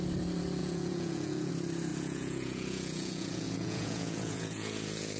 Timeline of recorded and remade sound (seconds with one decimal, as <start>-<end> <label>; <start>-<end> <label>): 0.0-0.6 recorded; 0.6-1.5 remade; 1.5-1.9 recorded; 1.9-5.2 remade